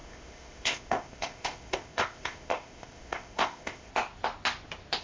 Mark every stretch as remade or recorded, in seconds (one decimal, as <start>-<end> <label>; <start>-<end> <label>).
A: 0.0-3.9 remade; 3.9-5.0 recorded

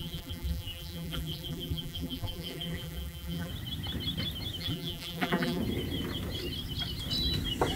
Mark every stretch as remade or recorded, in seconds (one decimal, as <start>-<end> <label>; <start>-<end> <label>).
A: 0.0-3.5 remade; 3.5-4.6 recorded; 4.6-5.6 remade; 5.6-7.8 recorded

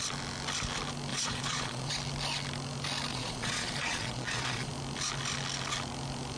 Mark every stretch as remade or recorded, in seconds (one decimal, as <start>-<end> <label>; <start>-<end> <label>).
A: 0.0-1.1 recorded; 1.1-1.9 remade; 1.9-3.1 recorded; 3.1-4.7 remade; 4.7-6.4 recorded

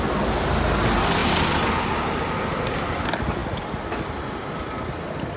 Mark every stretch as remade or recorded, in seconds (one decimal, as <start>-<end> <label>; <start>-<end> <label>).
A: 0.0-5.4 recorded

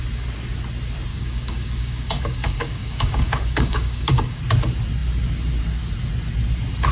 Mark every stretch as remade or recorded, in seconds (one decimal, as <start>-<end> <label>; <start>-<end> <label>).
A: 0.0-1.1 recorded; 1.1-4.4 remade; 4.4-6.9 recorded

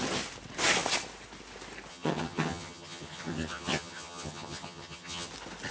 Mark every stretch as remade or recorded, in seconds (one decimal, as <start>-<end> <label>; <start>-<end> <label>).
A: 0.0-1.9 recorded; 1.9-5.3 remade; 5.3-5.7 recorded

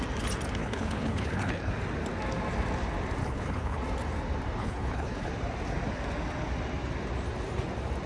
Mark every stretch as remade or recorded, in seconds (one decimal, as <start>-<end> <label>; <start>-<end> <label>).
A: 0.0-0.6 recorded; 0.6-1.7 remade; 1.7-3.2 recorded; 3.2-3.8 remade; 3.8-4.6 recorded; 4.6-5.3 remade; 5.3-8.1 recorded

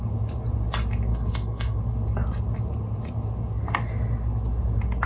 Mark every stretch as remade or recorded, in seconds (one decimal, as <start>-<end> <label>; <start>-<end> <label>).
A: 0.0-1.1 recorded; 1.1-1.8 remade; 1.8-5.1 recorded